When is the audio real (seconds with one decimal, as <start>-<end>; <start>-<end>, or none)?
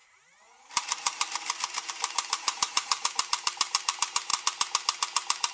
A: 4.3-5.5